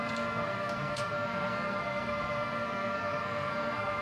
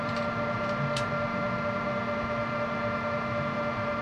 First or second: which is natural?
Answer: second